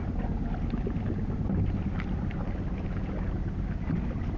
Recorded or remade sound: recorded